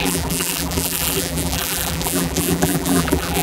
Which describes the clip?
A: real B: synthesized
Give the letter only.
B